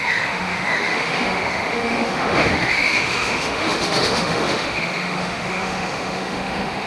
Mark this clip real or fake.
fake